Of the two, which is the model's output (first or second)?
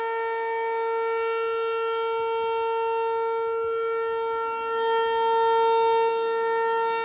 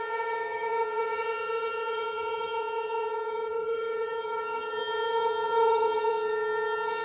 second